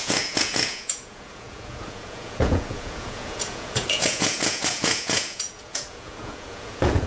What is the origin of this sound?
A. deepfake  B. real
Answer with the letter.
A